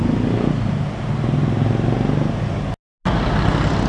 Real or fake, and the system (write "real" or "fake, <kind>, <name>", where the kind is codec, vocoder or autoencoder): real